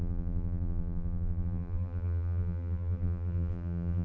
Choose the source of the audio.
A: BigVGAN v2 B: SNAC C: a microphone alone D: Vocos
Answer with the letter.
A